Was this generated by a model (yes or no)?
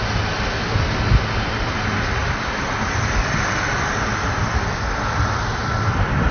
no